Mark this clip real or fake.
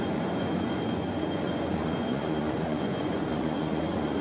fake